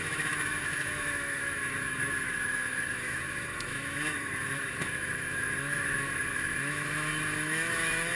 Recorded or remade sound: remade